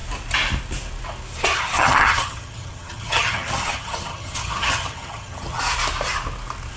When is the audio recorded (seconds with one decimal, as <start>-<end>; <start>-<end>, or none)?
0.0-1.5; 5.6-6.8